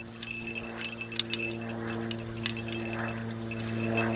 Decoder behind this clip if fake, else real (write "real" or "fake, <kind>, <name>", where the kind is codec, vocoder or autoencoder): real